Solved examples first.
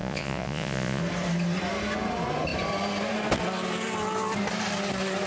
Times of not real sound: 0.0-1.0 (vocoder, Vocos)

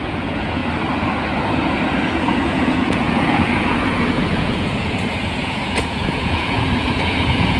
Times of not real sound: 0.0-0.6 (vocoder, Vocos); 2.0-7.6

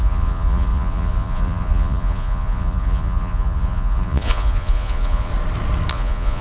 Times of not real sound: 0.0-5.3 (vocoder, Vocos); 5.9-6.4

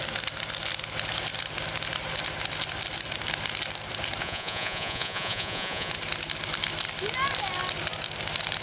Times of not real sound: 4.2-5.9 (vocoder, Vocos)

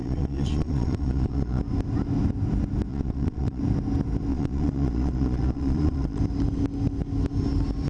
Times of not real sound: 0.0-1.6 (vocoder, Vocos); 2.9-3.6; 4.3-6.2